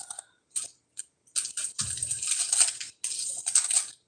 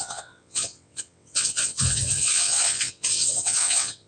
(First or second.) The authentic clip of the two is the first